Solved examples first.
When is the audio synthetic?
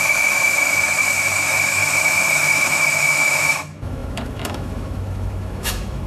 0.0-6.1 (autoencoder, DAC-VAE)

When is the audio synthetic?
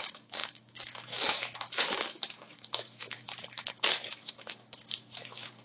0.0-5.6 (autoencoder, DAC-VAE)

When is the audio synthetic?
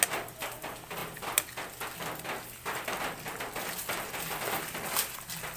none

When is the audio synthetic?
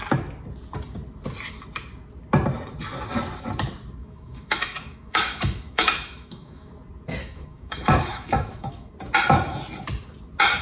4.0-6.7 (autoencoder, DAC-VAE); 7.2-8.9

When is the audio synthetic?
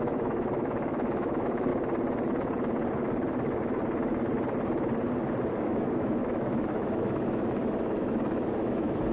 0.0-1.7 (autoencoder, DAC-VAE); 5.5-9.1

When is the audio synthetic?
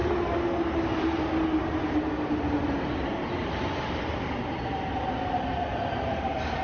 none